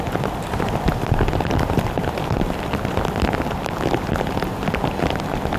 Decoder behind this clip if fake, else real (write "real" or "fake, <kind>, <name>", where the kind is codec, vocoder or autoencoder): real